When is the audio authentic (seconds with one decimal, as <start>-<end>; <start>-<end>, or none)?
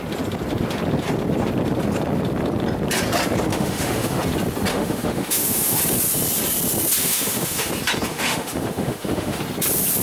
0.0-3.5; 4.2-4.7; 5.8-7.0; 7.7-8.1; 9.4-10.0